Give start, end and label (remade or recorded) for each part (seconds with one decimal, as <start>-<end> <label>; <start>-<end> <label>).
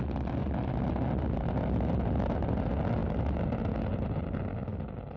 0.0-3.0 recorded; 3.0-3.5 remade; 3.5-3.9 recorded; 3.9-4.4 remade; 4.4-5.2 recorded